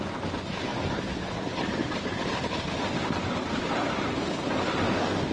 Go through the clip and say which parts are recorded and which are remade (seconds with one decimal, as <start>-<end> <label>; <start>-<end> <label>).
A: 0.0-0.7 recorded; 0.7-3.7 remade; 3.7-5.3 recorded